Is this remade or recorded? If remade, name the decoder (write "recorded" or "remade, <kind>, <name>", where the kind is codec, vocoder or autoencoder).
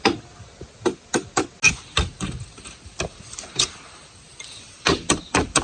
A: recorded